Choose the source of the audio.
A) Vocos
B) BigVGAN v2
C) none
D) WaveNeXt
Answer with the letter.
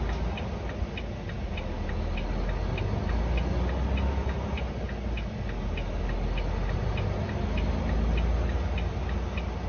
C